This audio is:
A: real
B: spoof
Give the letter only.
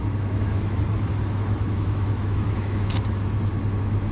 B